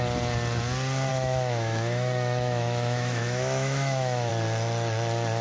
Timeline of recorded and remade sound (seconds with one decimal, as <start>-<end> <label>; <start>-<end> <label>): 0.0-1.1 recorded; 1.1-4.3 remade; 4.3-5.4 recorded